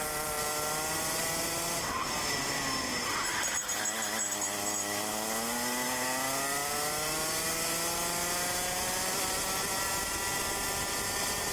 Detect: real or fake real